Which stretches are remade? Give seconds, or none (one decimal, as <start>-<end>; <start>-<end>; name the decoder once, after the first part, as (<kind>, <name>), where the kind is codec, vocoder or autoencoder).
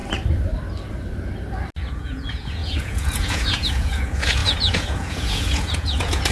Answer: 1.9-6.3 (vocoder, Vocos)